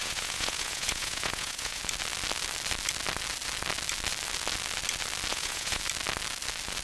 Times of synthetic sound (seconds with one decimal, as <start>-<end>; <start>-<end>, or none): 0.0-1.8; 5.3-5.8